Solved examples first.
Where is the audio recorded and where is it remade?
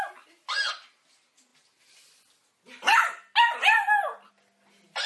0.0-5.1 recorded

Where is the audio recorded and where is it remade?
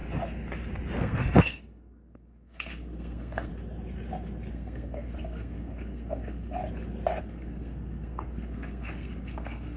0.0-1.0 recorded; 1.0-3.5 remade; 3.5-4.5 recorded; 4.5-6.6 remade; 6.6-7.2 recorded; 7.2-9.8 remade